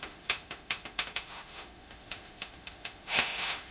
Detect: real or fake fake